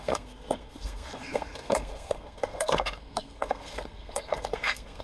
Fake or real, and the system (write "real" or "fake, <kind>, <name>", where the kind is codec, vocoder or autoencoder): fake, codec, SNAC